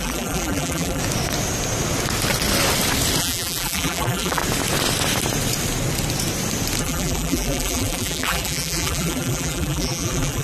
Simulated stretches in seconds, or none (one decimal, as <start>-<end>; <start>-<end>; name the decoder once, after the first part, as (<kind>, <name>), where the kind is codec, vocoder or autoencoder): 0.0-1.0 (vocoder, BigVGAN v2); 3.2-4.4; 6.8-10.4